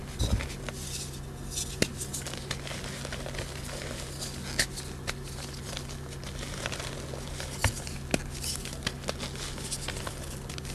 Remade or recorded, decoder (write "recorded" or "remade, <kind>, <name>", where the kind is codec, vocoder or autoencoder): recorded